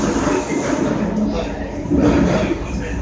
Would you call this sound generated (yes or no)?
no